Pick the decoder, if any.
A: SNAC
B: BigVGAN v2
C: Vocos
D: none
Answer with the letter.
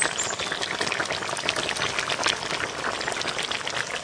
D